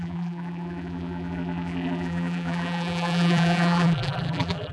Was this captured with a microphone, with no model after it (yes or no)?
no